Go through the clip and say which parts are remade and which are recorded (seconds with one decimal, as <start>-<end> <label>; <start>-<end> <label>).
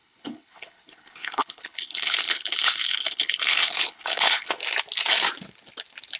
0.0-4.6 remade; 4.6-6.2 recorded